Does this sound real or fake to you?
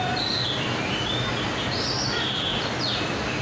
real